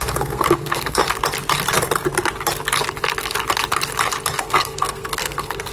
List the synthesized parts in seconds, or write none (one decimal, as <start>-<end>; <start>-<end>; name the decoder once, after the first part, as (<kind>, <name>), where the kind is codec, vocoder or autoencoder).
0.0-1.0 (codec, SNAC); 4.4-5.7